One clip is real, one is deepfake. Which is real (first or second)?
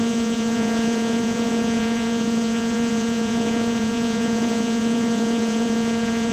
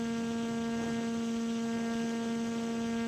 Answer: second